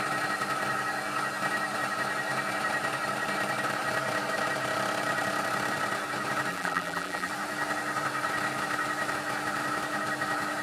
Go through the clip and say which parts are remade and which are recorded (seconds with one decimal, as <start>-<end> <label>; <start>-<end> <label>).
0.0-6.5 recorded; 6.5-7.3 remade; 7.3-10.6 recorded